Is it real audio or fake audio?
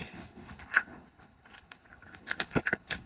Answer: fake